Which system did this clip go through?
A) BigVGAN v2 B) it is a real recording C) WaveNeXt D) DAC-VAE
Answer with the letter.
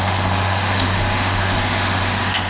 D